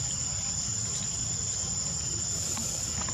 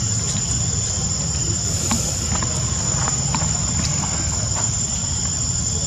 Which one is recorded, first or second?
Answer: first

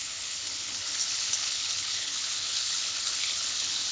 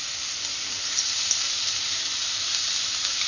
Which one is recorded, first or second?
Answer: second